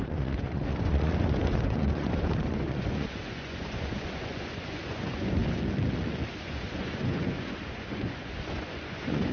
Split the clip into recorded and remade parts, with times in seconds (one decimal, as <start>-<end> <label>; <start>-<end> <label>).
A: 0.0-5.4 remade; 5.4-6.4 recorded; 6.4-9.3 remade